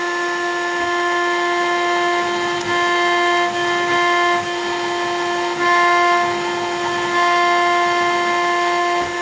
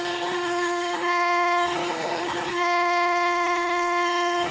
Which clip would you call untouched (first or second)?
first